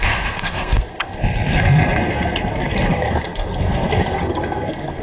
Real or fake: fake